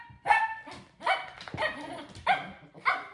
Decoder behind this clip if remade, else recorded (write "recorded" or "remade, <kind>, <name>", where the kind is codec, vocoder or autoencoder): recorded